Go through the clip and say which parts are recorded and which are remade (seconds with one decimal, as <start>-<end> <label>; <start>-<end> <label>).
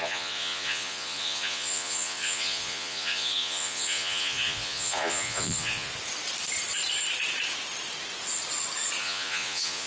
0.0-5.9 remade; 5.9-9.0 recorded; 9.0-9.9 remade